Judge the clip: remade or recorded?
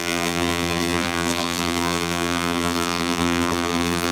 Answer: remade